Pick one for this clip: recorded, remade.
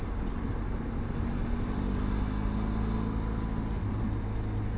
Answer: recorded